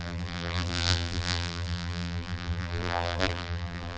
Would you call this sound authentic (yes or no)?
no